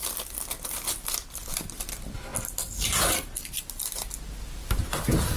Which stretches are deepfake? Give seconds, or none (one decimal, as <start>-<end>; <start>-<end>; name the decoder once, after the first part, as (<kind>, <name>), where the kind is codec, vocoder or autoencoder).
none